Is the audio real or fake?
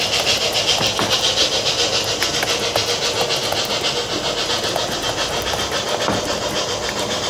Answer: real